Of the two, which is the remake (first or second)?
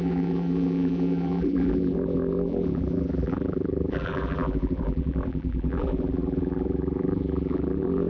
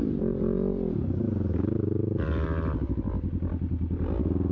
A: first